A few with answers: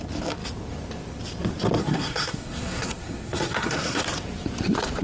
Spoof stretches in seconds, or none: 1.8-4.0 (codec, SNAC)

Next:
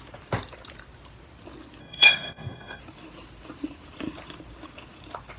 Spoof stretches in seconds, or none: 1.8-2.8 (codec, SNAC)

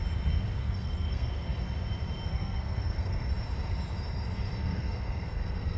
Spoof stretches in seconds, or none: 0.6-1.6 (codec, SNAC); 2.3-3.3; 4.6-5.8

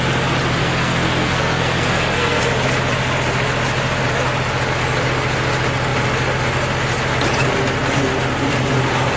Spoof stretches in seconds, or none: 0.6-2.4 (codec, SNAC)